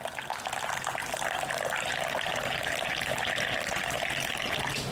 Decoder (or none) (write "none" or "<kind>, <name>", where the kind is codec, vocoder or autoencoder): none